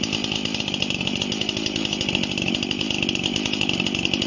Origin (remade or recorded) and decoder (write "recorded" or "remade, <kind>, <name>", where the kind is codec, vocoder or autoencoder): recorded